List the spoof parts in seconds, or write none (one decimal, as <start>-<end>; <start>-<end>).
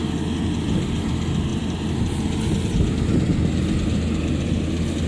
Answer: none